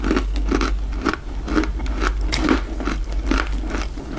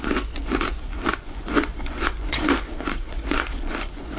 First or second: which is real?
first